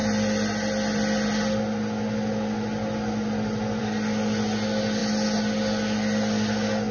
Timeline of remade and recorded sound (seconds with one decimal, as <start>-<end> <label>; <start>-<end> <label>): 0.0-6.9 recorded